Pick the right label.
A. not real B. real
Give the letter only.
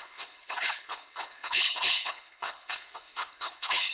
A